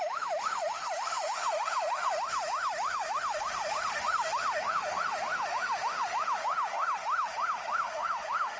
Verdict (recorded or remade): remade